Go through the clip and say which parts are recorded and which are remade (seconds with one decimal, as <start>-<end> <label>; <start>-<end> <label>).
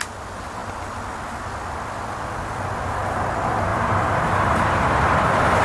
0.0-3.7 recorded; 3.7-5.6 remade